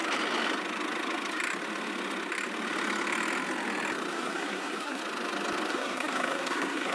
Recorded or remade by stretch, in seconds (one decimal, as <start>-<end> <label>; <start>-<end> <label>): 0.0-4.1 recorded; 4.1-5.0 remade; 5.0-5.7 recorded; 5.7-6.9 remade